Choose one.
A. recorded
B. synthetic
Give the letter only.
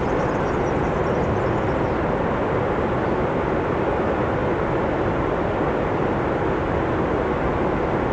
A